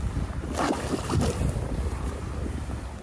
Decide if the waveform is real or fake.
real